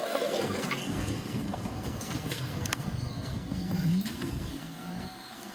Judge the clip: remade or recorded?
remade